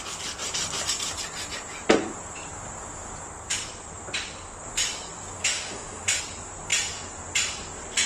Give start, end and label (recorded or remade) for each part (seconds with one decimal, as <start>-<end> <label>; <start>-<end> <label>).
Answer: 0.0-5.4 recorded; 5.4-6.2 remade; 6.2-8.1 recorded